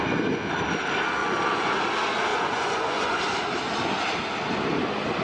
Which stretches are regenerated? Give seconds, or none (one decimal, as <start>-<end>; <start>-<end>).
1.2-1.7; 2.3-3.2